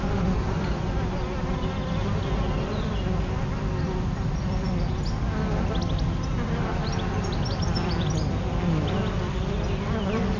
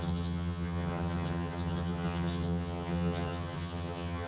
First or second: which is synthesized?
second